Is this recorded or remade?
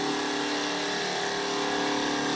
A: recorded